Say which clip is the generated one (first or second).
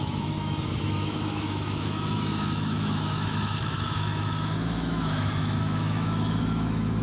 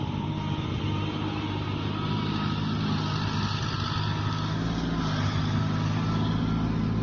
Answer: first